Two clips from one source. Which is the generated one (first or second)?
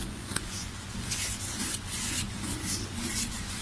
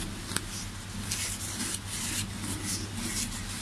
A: first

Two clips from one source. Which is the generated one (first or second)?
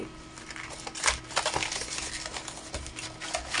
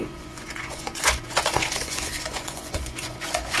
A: second